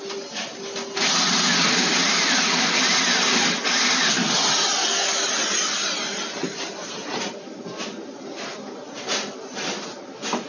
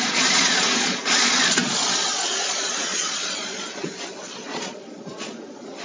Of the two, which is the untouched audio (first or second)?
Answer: first